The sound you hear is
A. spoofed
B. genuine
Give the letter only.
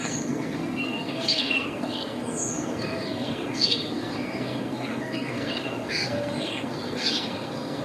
A